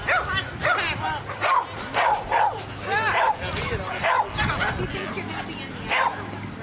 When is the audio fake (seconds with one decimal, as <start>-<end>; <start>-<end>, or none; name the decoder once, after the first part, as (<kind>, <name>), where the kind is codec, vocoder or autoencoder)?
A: none